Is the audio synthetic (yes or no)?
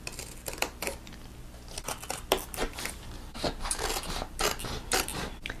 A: no